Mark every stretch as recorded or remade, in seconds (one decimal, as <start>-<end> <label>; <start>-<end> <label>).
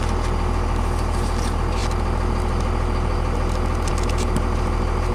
0.0-5.1 recorded